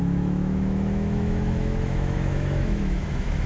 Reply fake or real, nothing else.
fake